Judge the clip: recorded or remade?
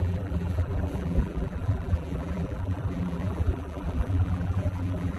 remade